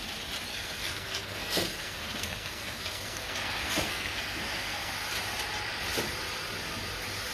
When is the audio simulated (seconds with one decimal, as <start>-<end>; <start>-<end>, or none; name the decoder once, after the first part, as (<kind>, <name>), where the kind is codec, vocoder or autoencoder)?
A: 0.5-4.9 (codec, SNAC)